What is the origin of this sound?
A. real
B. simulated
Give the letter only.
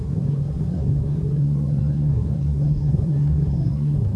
B